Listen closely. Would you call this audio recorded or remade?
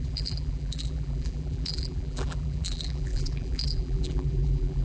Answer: remade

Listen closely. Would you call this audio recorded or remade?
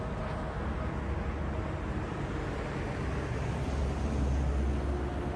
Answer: recorded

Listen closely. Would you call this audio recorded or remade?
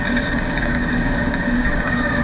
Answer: remade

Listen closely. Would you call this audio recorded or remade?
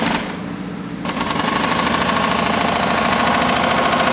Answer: recorded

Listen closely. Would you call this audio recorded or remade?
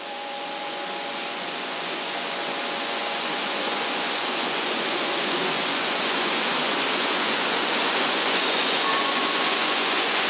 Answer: remade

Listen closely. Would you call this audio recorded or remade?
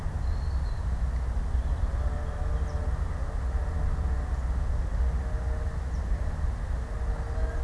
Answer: recorded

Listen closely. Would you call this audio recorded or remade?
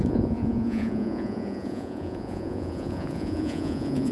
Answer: remade